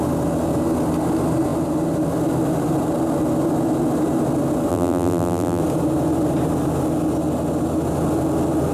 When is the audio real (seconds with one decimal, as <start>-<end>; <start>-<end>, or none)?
0.0-4.7; 5.6-8.7